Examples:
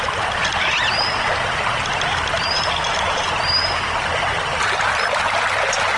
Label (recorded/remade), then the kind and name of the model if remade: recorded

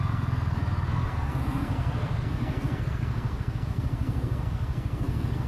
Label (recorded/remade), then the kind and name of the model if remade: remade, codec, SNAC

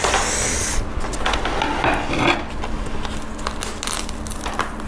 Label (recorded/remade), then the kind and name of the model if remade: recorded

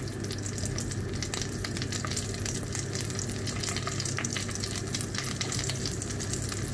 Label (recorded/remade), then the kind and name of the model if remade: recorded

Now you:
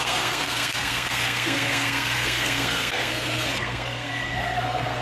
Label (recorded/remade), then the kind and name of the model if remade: remade, codec, SNAC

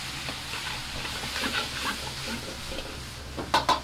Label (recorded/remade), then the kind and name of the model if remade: recorded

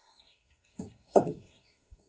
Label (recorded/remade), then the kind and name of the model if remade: remade, codec, SNAC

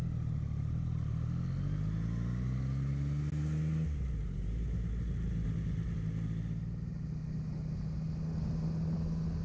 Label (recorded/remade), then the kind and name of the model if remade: recorded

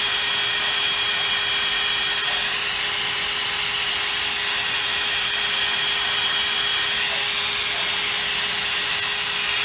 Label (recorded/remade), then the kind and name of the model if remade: recorded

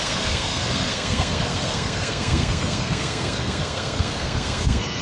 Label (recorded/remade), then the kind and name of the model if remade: remade, codec, SNAC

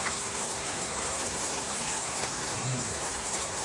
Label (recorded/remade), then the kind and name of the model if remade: remade, codec, SNAC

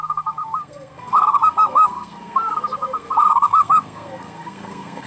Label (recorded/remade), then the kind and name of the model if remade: remade, codec, SNAC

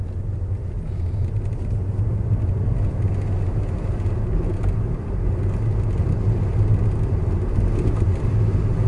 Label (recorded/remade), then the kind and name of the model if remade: recorded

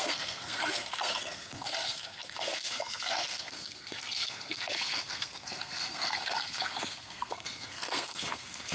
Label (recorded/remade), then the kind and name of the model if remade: remade, codec, SNAC